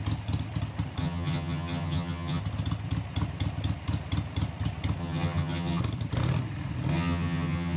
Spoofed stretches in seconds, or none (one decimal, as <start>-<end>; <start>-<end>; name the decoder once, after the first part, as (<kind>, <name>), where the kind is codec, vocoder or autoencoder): 1.0-2.4 (vocoder, HiFi-GAN); 5.0-5.8; 6.9-7.8